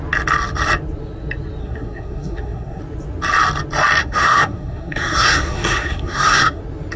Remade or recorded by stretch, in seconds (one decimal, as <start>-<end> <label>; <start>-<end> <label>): 0.0-1.6 recorded; 1.6-2.8 remade; 2.8-4.0 recorded; 4.0-6.6 remade; 6.6-7.0 recorded